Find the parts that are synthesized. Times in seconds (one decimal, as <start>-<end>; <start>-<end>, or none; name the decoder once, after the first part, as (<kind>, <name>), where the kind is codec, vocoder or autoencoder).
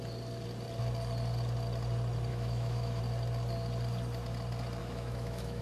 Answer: 2.3-3.0 (autoencoder, DAC-VAE); 4.8-5.6